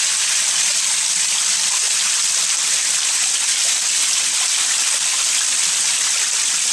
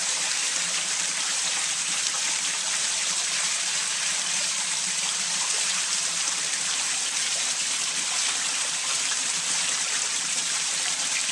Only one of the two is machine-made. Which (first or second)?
second